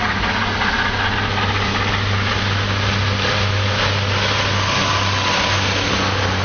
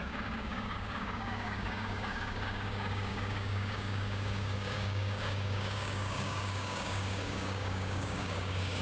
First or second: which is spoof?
second